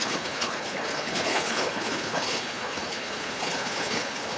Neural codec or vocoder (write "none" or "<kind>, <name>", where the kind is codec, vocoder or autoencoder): codec, HILCodec